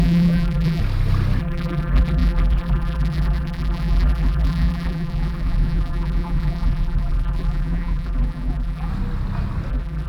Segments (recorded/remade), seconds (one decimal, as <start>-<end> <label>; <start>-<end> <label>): 0.0-0.8 remade; 0.8-1.4 recorded; 1.4-8.9 remade; 8.9-9.7 recorded; 9.7-10.1 remade